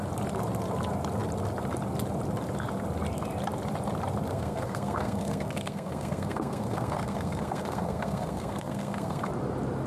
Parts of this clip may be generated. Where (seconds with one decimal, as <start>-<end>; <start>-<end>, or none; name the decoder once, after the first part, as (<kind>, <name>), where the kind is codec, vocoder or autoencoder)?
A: 4.3-9.2 (codec, SNAC)